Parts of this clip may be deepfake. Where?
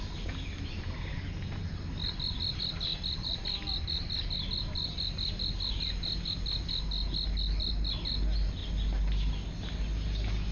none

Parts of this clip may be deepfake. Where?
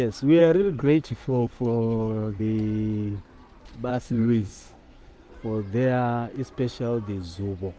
0.4-2.4 (codec, SNAC); 3.9-5.3